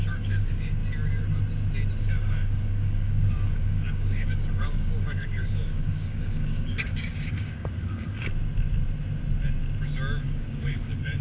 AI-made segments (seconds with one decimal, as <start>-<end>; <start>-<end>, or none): 0.0-0.8; 2.0-8.3; 10.2-11.2